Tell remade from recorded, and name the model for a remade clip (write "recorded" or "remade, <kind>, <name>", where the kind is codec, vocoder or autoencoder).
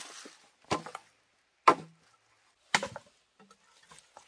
recorded